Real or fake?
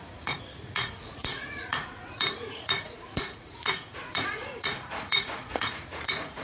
fake